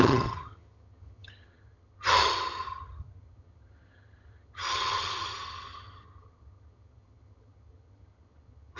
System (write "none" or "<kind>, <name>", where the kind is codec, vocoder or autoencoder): vocoder, HiFi-GAN